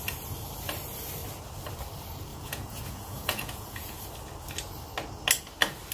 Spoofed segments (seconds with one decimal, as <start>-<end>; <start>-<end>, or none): 2.3-4.0